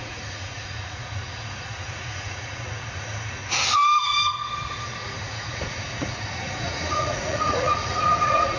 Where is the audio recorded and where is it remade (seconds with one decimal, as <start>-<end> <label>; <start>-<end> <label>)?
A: 0.0-3.4 remade; 3.4-5.0 recorded; 5.0-8.6 remade